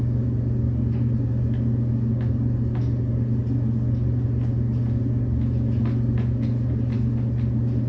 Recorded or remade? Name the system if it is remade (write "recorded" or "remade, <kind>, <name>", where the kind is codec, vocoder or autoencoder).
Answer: recorded